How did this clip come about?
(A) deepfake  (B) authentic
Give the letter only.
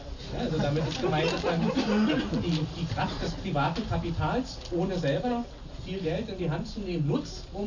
B